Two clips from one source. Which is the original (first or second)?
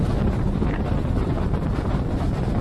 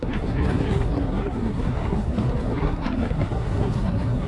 first